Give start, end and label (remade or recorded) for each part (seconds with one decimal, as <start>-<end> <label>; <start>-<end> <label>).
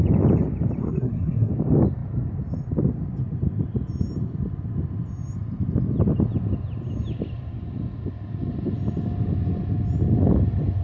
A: 0.0-0.8 recorded; 0.8-1.5 remade; 1.5-10.8 recorded